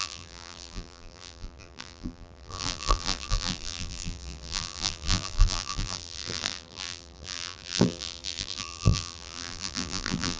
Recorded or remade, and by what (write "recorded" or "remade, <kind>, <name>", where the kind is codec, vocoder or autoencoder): remade, vocoder, BigVGAN v2